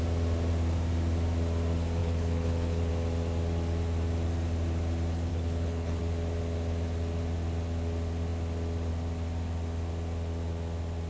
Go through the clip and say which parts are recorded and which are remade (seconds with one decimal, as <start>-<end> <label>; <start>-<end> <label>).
0.0-2.0 recorded; 2.0-2.9 remade; 2.9-5.3 recorded; 5.3-6.0 remade; 6.0-11.1 recorded